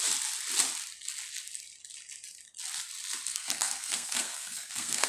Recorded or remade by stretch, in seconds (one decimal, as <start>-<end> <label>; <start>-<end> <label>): 0.0-3.3 recorded; 3.3-5.1 remade